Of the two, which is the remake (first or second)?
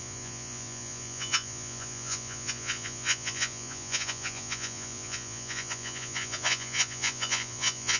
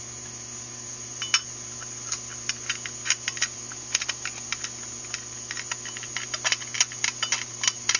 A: first